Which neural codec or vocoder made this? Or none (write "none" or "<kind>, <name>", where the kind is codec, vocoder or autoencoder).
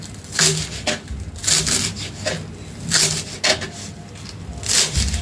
none